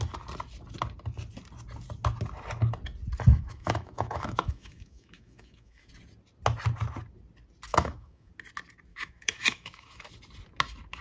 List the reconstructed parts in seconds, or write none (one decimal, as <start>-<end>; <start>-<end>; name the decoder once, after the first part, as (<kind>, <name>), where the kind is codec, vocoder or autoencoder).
3.3-5.9 (autoencoder, DAC-VAE); 7.7-8.3; 8.9-10.1